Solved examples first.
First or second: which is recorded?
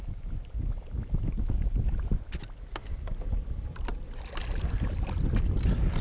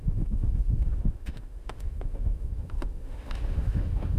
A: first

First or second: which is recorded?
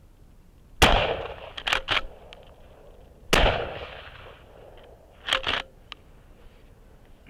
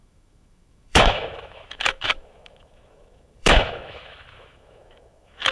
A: first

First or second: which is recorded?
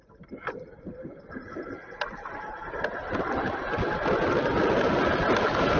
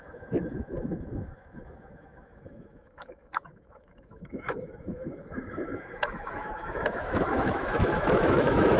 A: first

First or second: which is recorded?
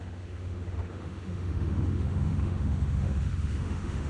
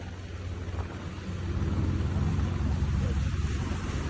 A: second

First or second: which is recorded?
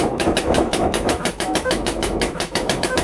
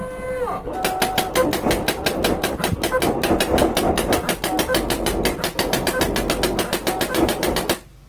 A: second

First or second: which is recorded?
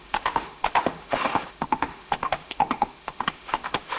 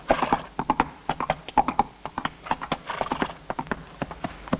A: second